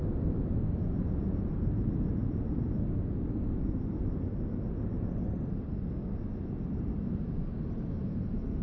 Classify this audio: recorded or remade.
recorded